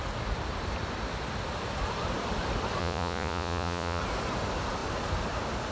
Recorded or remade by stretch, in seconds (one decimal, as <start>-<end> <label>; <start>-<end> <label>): 0.0-2.8 recorded; 2.8-4.0 remade; 4.0-5.7 recorded